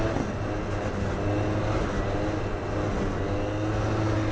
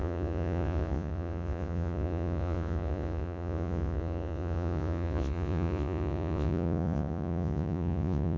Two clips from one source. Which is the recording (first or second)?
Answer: first